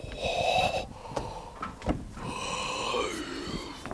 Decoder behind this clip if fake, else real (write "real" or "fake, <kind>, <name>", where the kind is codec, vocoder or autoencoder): real